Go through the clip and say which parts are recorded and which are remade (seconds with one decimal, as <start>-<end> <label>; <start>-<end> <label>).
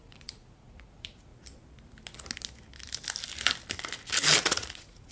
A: 0.0-1.3 remade; 1.3-4.4 recorded; 4.4-5.1 remade